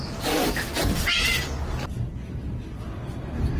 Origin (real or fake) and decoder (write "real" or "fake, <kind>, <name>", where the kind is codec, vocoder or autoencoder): real